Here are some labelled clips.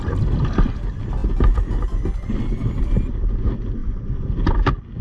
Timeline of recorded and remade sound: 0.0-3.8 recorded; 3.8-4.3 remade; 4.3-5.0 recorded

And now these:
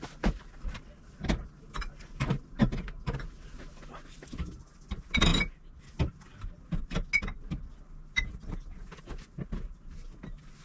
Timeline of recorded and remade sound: 0.0-10.6 recorded

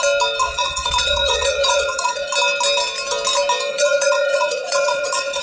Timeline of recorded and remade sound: 0.0-0.4 recorded; 0.4-2.3 remade; 2.3-3.7 recorded; 3.7-5.4 remade

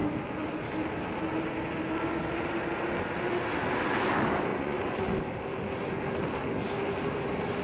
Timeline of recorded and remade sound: 0.0-4.5 recorded; 4.5-5.0 remade; 5.0-7.6 recorded

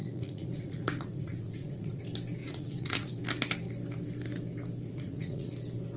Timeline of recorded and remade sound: 0.0-2.0 remade; 2.0-2.4 recorded; 2.4-3.1 remade; 3.1-4.9 recorded; 4.9-5.5 remade; 5.5-6.0 recorded